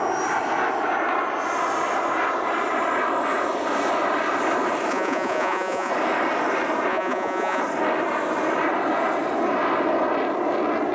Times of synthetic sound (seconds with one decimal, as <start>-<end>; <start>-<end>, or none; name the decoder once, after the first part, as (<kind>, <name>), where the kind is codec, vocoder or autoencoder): 4.9-5.9 (vocoder, Vocos); 6.9-7.6